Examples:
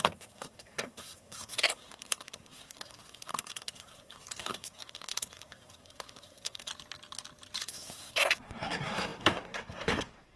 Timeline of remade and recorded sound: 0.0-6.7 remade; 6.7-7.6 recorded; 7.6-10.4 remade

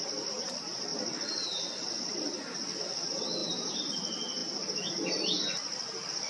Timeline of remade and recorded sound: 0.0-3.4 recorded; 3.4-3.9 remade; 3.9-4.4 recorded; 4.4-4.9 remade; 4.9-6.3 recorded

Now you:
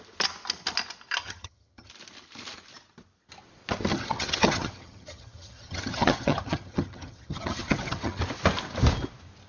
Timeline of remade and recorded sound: 0.0-1.2 recorded; 1.2-1.9 remade; 1.9-3.9 recorded; 3.9-8.2 remade; 8.2-9.5 recorded

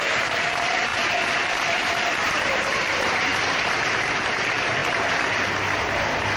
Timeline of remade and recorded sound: 0.0-3.3 remade; 3.3-3.9 recorded; 3.9-4.8 remade; 4.8-6.4 recorded

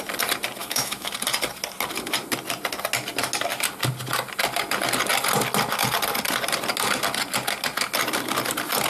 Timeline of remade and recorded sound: 0.0-0.6 recorded; 0.6-1.1 remade; 1.1-8.9 recorded